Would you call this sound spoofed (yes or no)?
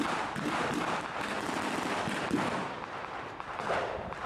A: no